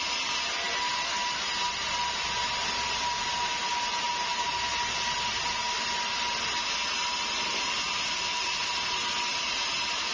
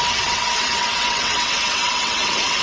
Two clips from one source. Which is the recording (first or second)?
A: first